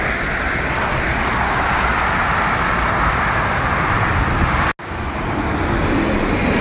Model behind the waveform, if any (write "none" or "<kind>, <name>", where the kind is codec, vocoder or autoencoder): none